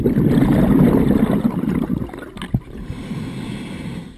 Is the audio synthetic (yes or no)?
no